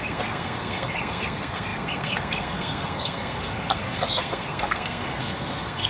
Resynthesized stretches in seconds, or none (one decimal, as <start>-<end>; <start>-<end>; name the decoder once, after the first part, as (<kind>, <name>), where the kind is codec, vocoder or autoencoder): 0.0-5.9 (codec, SNAC)